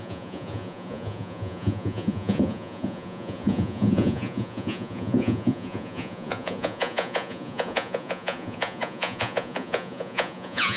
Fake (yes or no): yes